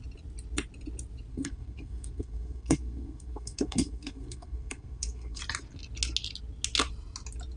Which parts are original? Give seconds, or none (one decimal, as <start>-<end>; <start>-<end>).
0.0-1.3; 5.4-7.6